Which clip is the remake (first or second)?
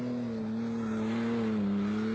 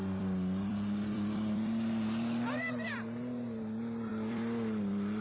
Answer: second